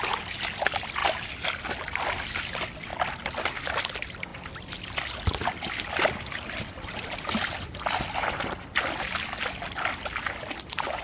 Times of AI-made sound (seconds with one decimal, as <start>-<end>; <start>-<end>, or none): none